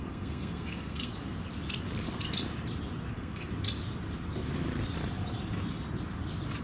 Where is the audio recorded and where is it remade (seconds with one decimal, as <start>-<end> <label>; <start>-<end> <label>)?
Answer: 0.0-1.1 remade; 1.1-3.1 recorded; 3.1-3.5 remade; 3.5-6.6 recorded